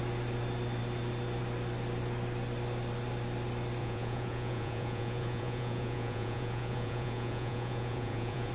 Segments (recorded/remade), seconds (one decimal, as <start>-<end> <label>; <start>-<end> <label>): 0.0-3.8 recorded; 3.8-8.5 remade

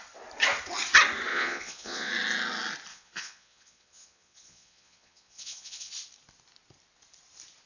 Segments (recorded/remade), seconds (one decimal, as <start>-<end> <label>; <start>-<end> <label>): 0.0-1.3 recorded; 1.3-2.1 remade; 2.1-2.9 recorded; 2.9-5.9 remade; 5.9-7.7 recorded